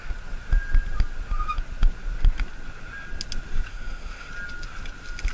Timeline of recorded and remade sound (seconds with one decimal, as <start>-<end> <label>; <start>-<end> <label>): 0.0-3.7 recorded; 3.7-4.3 remade; 4.3-5.3 recorded